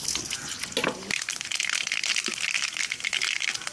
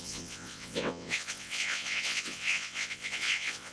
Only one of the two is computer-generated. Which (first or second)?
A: second